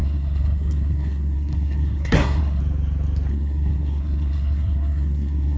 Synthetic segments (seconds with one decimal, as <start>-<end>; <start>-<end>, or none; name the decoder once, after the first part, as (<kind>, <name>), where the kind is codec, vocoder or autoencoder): 0.0-2.6 (codec, SNAC); 3.3-5.6